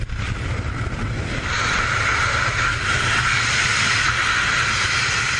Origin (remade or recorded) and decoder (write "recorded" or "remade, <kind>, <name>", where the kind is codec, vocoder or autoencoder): recorded